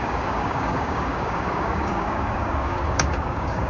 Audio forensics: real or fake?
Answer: fake